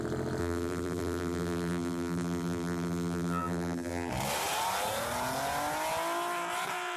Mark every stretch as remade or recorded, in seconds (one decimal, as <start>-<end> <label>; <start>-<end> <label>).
0.0-0.4 recorded; 0.4-4.1 remade; 4.1-7.0 recorded